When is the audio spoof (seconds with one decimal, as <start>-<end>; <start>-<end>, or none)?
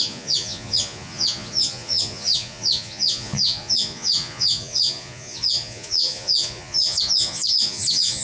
0.0-8.2